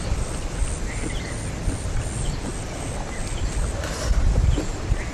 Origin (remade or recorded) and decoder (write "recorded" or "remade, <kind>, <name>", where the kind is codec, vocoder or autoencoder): recorded